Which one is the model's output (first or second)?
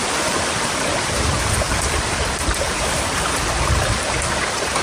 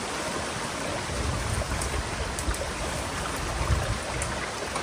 first